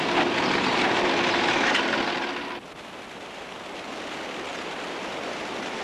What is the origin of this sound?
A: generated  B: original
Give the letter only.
B